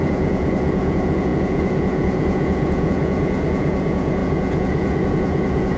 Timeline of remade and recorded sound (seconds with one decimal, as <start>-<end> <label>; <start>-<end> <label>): 0.0-5.8 remade